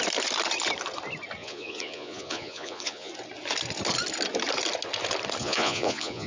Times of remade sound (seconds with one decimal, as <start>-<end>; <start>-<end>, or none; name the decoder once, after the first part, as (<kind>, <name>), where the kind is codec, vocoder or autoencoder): 1.4-3.1 (vocoder, Vocos); 5.4-6.3